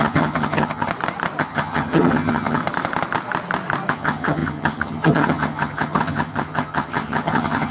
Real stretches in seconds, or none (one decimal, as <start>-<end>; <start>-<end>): 0.9-1.4; 2.6-3.9